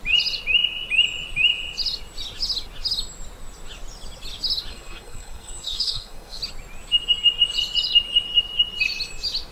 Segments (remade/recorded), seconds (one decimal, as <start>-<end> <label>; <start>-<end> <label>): 0.0-4.7 recorded; 4.7-6.4 remade; 6.4-9.5 recorded